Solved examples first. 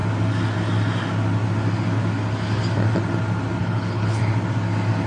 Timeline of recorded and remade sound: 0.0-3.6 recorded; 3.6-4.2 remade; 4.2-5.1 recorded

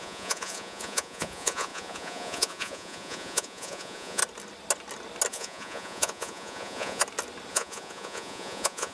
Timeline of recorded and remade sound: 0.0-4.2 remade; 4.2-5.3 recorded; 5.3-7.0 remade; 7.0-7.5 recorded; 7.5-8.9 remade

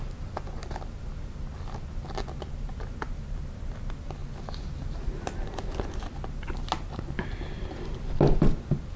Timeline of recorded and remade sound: 0.0-9.0 recorded

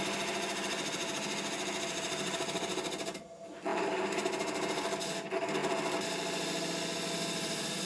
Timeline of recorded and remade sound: 0.0-3.7 recorded; 3.7-5.1 remade; 5.1-7.9 recorded

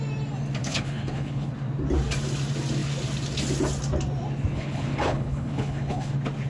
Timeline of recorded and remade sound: 0.0-0.6 recorded; 0.6-1.5 remade; 1.5-4.5 recorded; 4.5-6.1 remade; 6.1-6.5 recorded

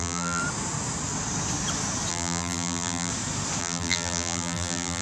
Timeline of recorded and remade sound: 0.0-0.4 remade; 0.4-2.1 recorded; 2.1-3.1 remade; 3.1-3.6 recorded; 3.6-5.0 remade

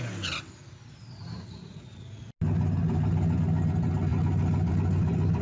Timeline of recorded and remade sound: 0.0-1.6 recorded; 1.6-2.2 remade; 2.2-5.4 recorded

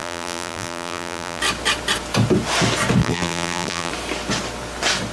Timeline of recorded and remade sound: 0.0-1.4 remade; 1.4-3.0 recorded; 3.0-3.9 remade; 3.9-5.1 recorded